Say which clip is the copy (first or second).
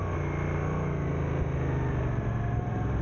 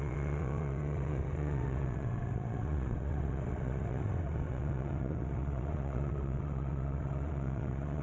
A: second